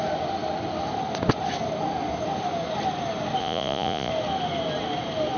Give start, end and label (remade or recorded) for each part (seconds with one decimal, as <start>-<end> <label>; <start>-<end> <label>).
0.0-3.4 recorded; 3.4-4.1 remade; 4.1-5.4 recorded